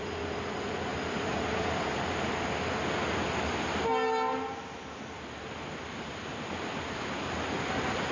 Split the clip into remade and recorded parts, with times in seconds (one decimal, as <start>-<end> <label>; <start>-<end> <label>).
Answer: 0.0-8.1 recorded